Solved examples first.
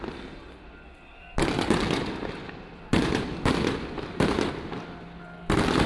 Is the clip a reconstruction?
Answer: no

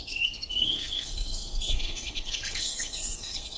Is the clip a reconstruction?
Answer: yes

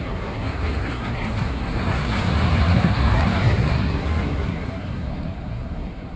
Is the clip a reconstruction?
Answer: yes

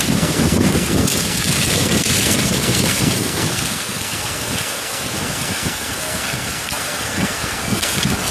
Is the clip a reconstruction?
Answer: yes